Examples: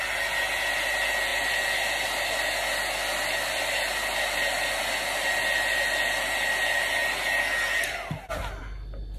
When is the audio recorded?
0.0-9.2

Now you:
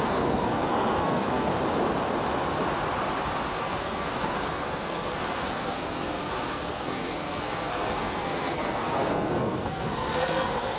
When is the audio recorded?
1.5-3.6

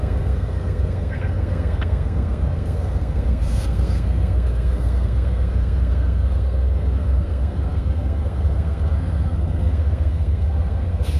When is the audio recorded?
none